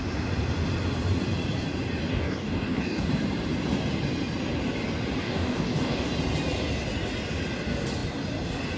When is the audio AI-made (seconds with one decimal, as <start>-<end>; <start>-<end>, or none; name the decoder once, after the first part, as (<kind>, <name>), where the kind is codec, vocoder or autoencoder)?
2.1-3.1 (codec, DAC); 5.2-6.1